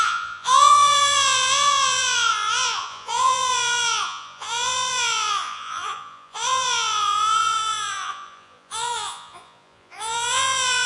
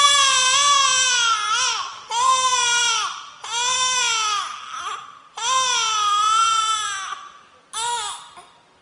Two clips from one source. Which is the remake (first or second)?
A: first